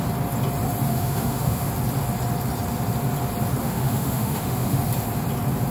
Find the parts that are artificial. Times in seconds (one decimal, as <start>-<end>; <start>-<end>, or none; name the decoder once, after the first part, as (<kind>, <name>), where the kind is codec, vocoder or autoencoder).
0.9-1.7 (autoencoder, DAC-VAE); 3.6-4.8